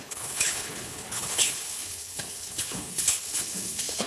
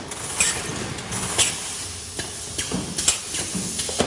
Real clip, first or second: second